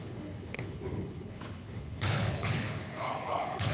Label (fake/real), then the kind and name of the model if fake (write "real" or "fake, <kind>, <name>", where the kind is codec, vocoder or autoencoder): fake, codec, HILCodec